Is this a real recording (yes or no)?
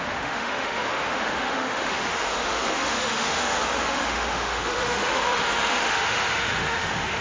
no